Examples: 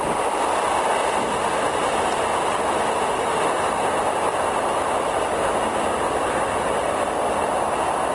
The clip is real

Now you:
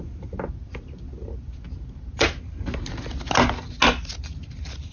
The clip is real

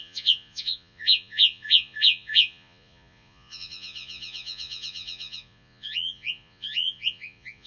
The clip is fake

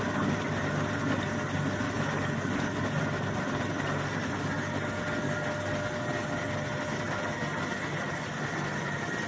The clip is real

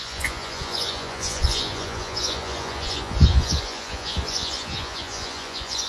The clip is fake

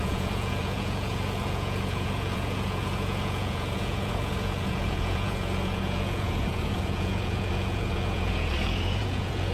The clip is fake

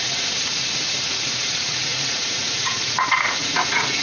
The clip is fake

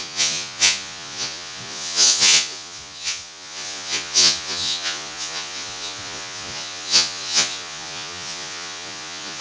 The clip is fake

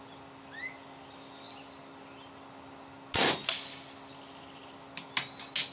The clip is real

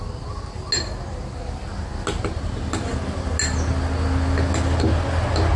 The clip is real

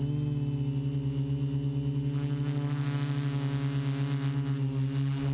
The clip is real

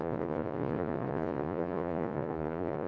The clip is fake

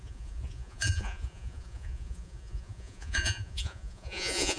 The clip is fake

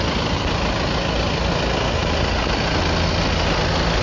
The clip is real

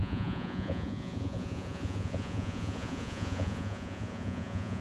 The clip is fake